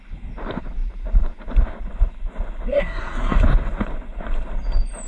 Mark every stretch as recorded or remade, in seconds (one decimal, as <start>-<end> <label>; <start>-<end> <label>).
0.0-2.7 recorded; 2.7-3.3 remade; 3.3-5.1 recorded